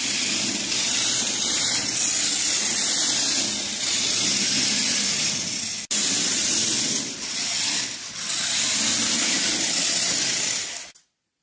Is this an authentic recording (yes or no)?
yes